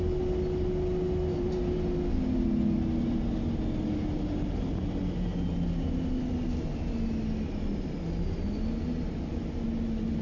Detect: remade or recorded recorded